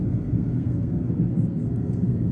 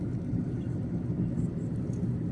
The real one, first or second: second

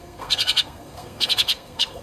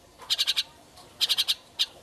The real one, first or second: second